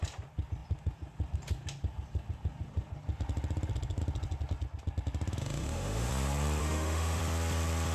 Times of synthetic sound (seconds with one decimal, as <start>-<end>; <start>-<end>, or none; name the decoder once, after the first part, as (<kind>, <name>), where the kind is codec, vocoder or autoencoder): 5.4-6.1 (autoencoder, DAC-VAE); 6.6-7.2